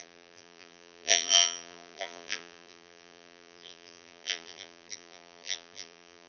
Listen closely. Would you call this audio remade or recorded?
remade